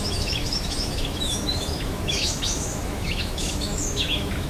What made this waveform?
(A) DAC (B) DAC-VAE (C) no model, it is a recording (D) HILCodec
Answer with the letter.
B